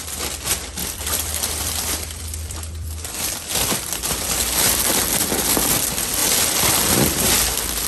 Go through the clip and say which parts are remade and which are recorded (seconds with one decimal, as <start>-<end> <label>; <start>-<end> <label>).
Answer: 0.0-0.8 recorded; 0.8-4.8 remade; 4.8-7.9 recorded